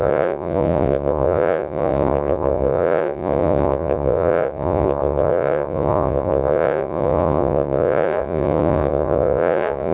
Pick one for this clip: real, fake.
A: fake